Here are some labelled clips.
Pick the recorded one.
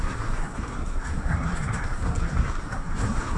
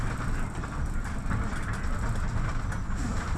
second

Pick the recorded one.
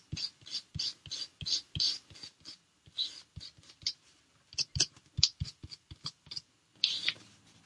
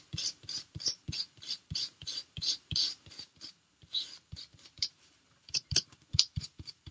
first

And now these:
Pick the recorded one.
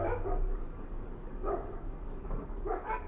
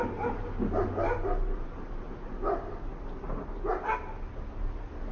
second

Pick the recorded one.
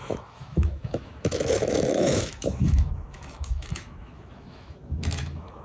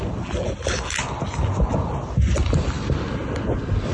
second